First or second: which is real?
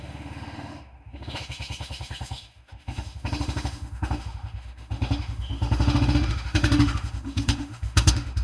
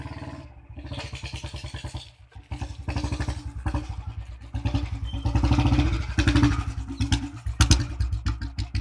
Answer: second